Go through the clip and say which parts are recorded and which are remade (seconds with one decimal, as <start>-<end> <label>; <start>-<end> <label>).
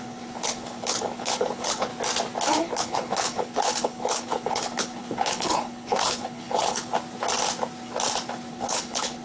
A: 0.0-1.9 remade; 1.9-2.6 recorded; 2.6-6.9 remade; 6.9-8.5 recorded; 8.5-9.2 remade